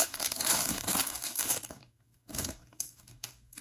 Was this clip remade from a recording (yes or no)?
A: yes